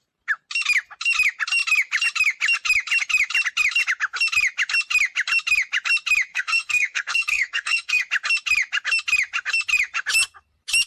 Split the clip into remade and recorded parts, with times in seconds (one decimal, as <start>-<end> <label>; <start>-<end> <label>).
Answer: 0.0-6.3 recorded; 6.3-8.0 remade; 8.0-10.9 recorded